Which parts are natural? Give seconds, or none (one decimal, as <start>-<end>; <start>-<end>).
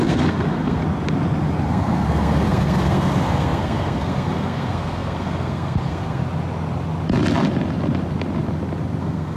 0.8-1.7; 6.2-9.0